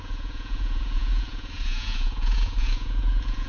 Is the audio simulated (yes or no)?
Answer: yes